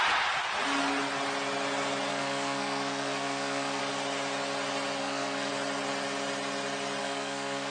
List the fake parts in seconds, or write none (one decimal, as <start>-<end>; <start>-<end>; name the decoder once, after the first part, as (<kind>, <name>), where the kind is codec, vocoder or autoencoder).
2.1-3.8 (codec, SNAC); 5.0-5.5; 7.0-7.7